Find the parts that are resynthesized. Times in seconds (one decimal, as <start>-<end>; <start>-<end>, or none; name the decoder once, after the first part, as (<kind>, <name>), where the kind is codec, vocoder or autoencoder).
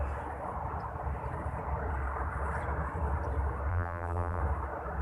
3.7-4.4 (vocoder, BigVGAN v2)